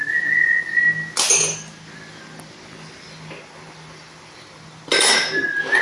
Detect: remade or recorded recorded